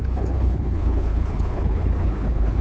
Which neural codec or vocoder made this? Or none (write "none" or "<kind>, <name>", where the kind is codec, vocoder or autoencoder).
codec, HILCodec